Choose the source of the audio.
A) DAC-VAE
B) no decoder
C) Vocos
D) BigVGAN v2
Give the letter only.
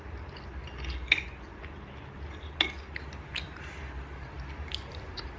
B